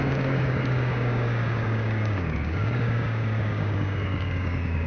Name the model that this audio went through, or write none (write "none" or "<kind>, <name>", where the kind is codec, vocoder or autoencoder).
codec, DAC